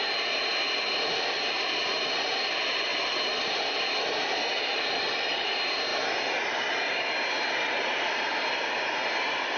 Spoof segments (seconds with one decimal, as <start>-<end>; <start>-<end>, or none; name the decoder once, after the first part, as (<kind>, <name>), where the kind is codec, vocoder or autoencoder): 2.9-5.2 (vocoder, BigVGAN v2); 5.9-6.9